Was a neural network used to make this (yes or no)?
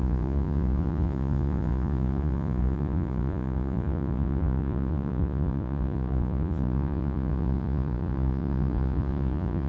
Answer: yes